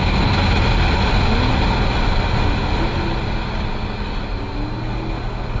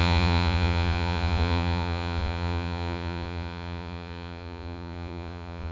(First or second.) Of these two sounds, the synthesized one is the second